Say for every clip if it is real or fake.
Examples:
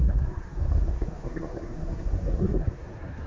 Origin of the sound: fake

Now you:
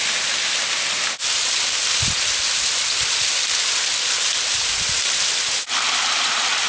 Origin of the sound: real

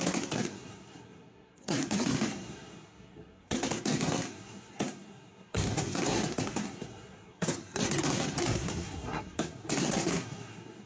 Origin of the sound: fake